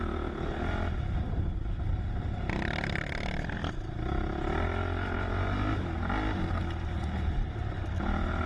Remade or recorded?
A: recorded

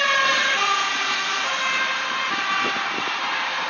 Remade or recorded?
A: remade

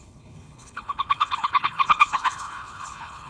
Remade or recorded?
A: remade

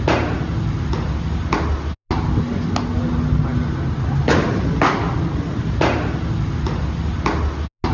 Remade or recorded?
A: recorded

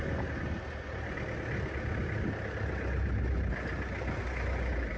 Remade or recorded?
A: recorded